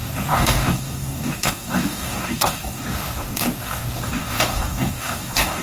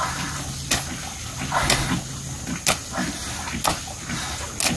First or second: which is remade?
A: first